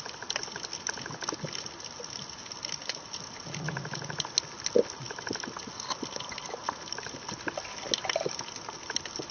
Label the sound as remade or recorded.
recorded